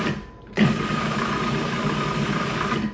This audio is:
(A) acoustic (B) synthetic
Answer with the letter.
A